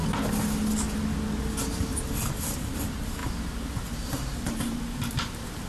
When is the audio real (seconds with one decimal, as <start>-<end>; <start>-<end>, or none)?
0.0-2.2